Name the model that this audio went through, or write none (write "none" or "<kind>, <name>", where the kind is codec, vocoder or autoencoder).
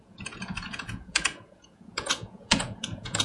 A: vocoder, Vocos